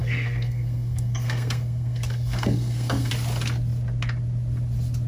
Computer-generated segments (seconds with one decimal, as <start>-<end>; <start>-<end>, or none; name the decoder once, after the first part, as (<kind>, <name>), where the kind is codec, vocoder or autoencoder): 0.0-3.1 (codec, SNAC)